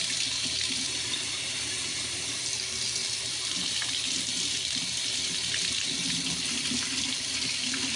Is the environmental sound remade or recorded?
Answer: recorded